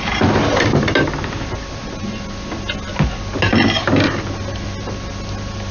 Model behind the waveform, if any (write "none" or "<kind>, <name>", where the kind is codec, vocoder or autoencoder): none